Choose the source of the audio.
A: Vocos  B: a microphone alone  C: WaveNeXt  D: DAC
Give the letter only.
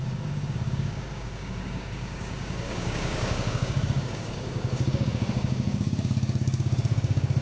D